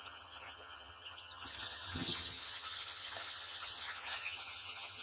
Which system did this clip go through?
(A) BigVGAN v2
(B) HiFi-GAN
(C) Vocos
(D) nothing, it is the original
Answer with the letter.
B